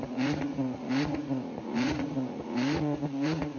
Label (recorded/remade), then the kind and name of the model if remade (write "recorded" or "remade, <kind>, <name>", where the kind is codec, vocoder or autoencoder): remade, vocoder, Vocos